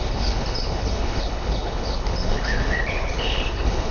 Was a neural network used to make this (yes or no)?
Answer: yes